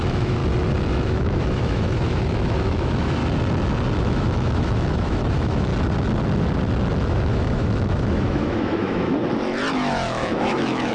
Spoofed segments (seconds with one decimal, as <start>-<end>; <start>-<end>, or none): 0.0-0.4; 1.1-3.2; 4.0-5.7; 6.9-9.2; 9.7-10.9